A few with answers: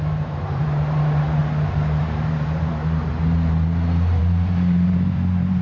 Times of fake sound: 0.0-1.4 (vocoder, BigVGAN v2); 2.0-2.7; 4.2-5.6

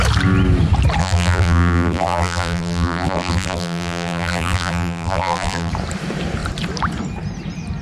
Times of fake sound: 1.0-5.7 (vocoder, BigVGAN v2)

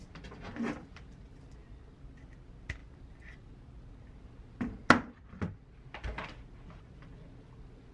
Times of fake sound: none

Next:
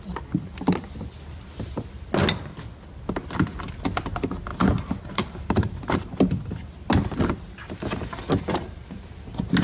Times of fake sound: 4.5-6.1 (vocoder, BigVGAN v2)

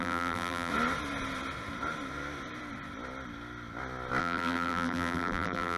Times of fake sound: 0.0-0.7 (vocoder, BigVGAN v2); 4.2-5.8

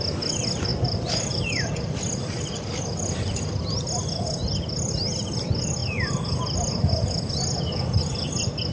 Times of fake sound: 0.7-2.0 (vocoder, BigVGAN v2)